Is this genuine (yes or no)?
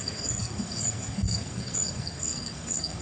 no